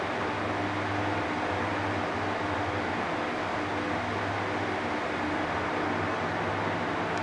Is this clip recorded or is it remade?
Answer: recorded